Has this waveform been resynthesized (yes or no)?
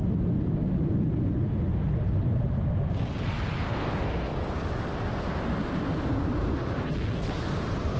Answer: no